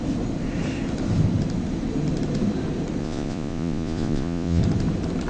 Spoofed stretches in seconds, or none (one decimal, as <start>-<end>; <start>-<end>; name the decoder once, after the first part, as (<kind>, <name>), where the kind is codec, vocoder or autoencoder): 3.0-4.6 (vocoder, Vocos)